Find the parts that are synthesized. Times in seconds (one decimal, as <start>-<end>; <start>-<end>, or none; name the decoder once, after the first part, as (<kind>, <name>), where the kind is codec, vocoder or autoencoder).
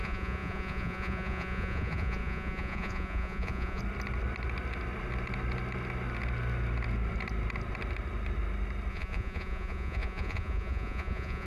0.0-3.8 (vocoder, Vocos); 8.9-11.5